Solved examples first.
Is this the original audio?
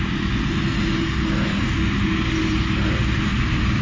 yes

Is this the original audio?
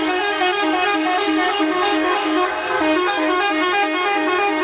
no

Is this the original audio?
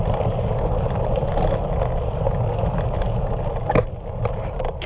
yes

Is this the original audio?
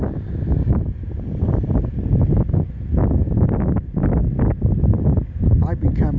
yes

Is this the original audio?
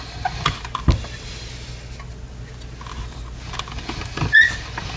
yes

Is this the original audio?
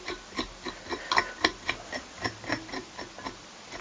yes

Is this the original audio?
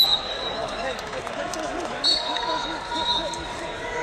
no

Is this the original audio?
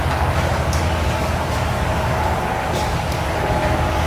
no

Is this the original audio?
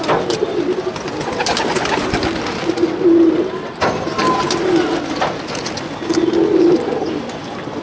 yes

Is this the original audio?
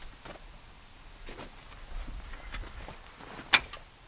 yes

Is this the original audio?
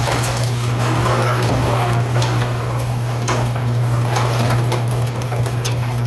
no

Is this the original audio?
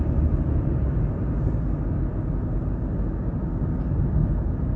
yes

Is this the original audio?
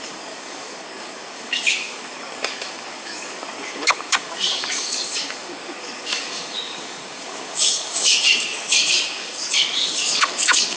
no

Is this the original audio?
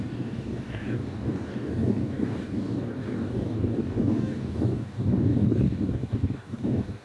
no